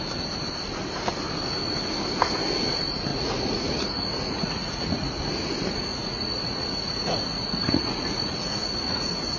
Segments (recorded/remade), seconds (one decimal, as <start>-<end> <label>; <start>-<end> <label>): 0.0-3.1 recorded; 3.1-5.3 remade; 5.3-5.9 recorded; 5.9-9.4 remade